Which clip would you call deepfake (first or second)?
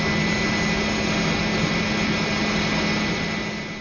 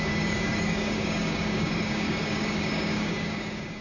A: second